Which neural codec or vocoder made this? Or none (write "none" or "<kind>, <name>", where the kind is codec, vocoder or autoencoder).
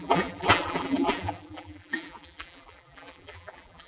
vocoder, BigVGAN v2